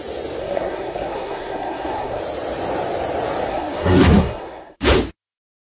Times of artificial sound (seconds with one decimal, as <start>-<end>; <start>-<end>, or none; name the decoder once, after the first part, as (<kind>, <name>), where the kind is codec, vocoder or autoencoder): 0.4-2.2 (codec, SNAC); 3.5-4.8